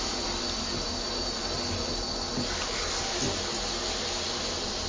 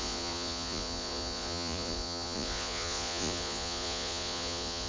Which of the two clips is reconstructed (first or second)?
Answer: second